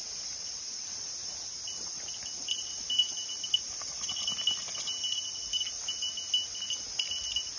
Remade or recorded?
recorded